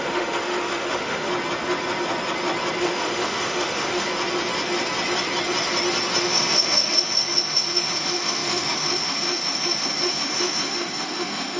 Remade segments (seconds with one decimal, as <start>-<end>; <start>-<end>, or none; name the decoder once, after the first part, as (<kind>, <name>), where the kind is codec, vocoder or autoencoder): 0.0-1.3 (autoencoder, DAC-VAE); 2.8-4.1; 6.2-11.6

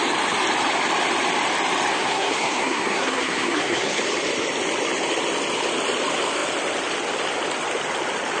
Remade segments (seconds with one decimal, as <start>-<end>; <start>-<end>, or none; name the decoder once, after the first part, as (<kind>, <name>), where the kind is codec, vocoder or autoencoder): 1.9-4.0 (codec, SNAC)

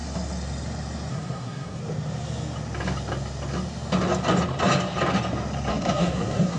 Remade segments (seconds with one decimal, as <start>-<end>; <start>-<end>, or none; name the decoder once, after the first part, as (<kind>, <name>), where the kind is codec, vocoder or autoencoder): 1.1-1.8 (codec, SNAC); 5.7-6.6

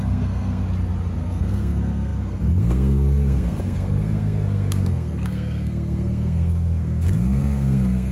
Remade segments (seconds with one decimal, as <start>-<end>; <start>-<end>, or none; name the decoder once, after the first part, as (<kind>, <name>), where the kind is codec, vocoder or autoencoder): 0.0-0.6 (codec, SNAC); 1.2-8.1

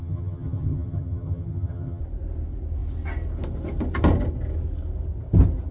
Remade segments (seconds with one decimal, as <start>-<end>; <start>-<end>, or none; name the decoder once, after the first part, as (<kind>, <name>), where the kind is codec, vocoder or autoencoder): 0.0-2.0 (vocoder, HiFi-GAN)

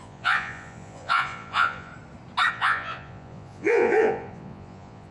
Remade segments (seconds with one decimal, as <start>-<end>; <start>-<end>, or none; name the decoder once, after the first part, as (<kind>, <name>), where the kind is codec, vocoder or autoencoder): 0.0-1.9 (vocoder, Vocos); 2.5-5.1

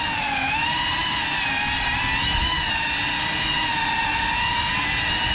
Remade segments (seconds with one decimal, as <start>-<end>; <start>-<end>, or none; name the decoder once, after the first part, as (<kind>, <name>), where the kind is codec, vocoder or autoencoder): none

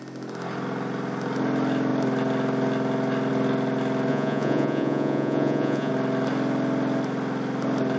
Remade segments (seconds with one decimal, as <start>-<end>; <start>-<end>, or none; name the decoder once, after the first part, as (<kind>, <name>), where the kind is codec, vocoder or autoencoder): 4.1-5.9 (vocoder, Vocos)